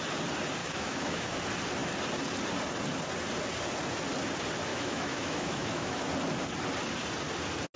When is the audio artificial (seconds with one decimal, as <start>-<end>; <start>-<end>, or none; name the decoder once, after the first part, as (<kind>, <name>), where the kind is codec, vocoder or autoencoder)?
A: 0.6-1.4 (autoencoder, DAC-VAE); 4.7-6.1